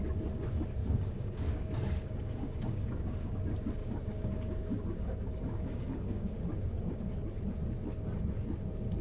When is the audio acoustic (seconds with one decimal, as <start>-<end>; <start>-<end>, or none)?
0.0-0.8; 3.4-3.8; 7.1-9.0